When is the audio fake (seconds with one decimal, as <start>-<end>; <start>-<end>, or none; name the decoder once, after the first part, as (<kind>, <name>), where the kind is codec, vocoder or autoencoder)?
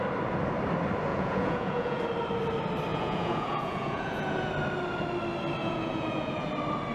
1.1-2.0 (vocoder, Vocos); 2.9-4.5; 5.6-6.5